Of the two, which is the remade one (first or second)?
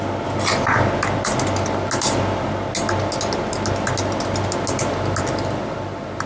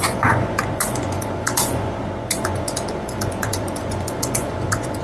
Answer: second